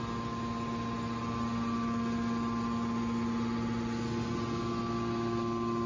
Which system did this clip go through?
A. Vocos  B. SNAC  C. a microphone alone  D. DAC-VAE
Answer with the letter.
C